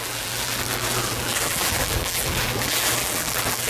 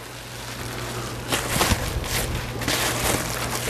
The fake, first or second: first